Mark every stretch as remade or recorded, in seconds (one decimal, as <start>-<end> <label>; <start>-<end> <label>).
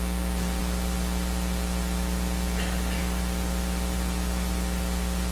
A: 0.0-5.3 recorded